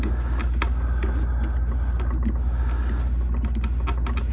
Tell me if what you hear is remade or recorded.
recorded